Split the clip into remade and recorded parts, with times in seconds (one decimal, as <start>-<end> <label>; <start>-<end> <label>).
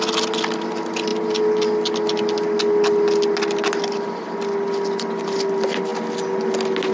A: 0.0-6.9 recorded